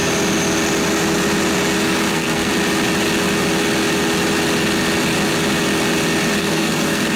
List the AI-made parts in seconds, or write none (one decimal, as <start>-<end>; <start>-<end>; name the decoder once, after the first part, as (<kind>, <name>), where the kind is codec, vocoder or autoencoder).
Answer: 2.1-2.5 (codec, SNAC); 6.4-7.2